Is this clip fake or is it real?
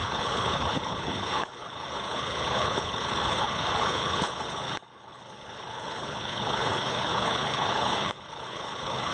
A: fake